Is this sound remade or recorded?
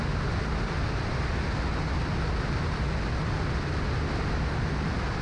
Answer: remade